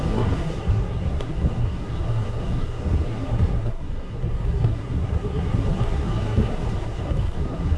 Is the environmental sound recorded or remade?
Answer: remade